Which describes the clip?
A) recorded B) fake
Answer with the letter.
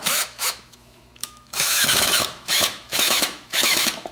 B